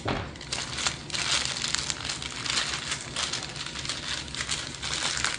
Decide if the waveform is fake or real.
real